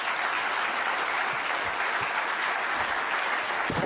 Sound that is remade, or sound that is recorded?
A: recorded